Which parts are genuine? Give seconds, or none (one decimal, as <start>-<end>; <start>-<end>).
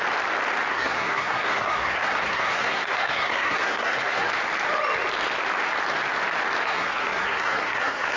0.0-0.7; 4.3-6.6